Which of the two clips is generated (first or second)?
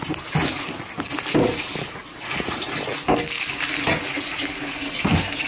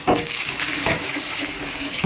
second